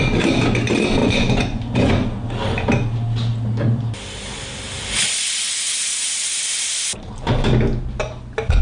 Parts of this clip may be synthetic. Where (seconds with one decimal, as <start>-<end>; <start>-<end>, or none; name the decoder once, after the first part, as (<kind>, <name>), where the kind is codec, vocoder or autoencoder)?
1.0-1.9 (vocoder, Vocos)